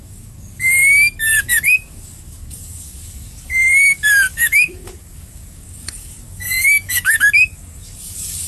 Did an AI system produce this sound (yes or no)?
yes